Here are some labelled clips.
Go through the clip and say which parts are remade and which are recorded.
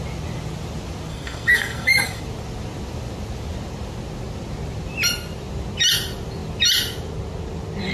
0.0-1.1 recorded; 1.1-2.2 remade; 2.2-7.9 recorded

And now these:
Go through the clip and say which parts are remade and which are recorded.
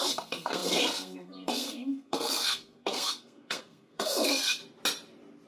0.0-4.6 remade; 4.6-5.5 recorded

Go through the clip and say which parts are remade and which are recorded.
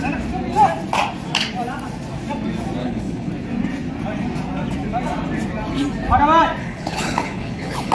0.0-2.8 recorded; 2.8-3.3 remade; 3.3-6.6 recorded; 6.6-7.9 remade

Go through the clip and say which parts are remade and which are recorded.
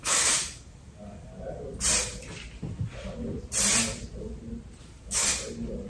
0.0-1.3 remade; 1.3-4.8 recorded; 4.8-5.3 remade; 5.3-5.9 recorded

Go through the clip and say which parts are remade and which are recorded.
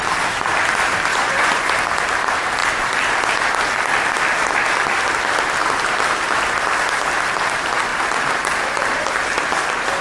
0.0-1.1 recorded; 1.1-1.7 remade; 1.7-10.0 recorded